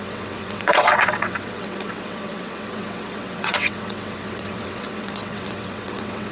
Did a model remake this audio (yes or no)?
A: yes